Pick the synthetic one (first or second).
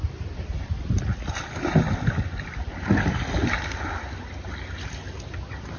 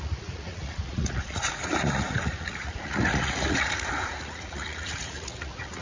second